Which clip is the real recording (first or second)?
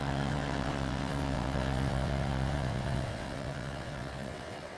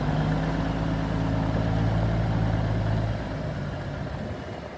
second